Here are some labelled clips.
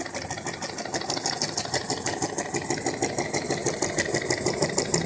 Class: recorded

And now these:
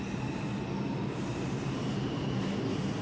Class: recorded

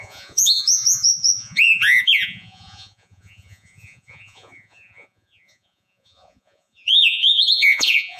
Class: remade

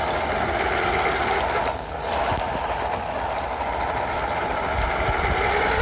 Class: recorded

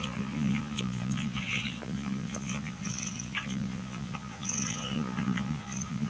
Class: remade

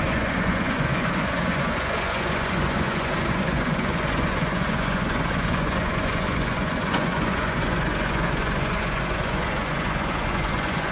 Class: remade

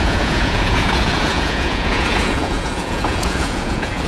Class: remade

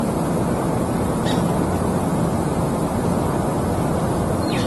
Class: recorded